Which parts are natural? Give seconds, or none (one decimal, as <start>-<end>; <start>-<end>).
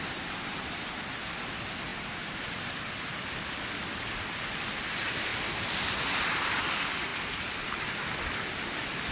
0.0-9.1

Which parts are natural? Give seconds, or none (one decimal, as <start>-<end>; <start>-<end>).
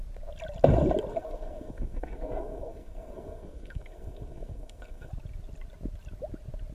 0.0-1.1; 5.1-6.7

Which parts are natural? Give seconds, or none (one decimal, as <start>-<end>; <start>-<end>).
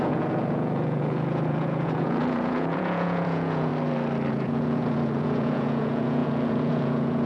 3.7-4.3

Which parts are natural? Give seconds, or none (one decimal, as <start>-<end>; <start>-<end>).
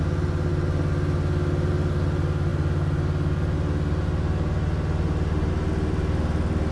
0.0-6.7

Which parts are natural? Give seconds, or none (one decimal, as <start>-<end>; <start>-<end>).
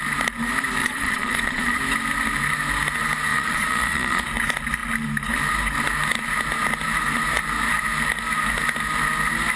0.0-0.8; 1.8-3.3; 4.2-9.6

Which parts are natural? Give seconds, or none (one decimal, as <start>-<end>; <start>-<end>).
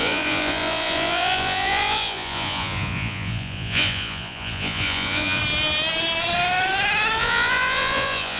5.4-7.2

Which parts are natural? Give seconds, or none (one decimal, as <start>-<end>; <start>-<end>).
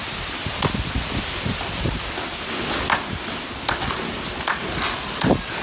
0.0-5.6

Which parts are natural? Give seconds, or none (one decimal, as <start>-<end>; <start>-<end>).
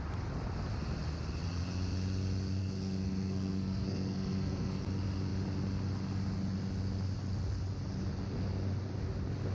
0.0-2.6; 4.8-9.5